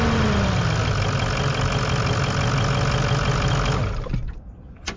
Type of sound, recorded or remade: recorded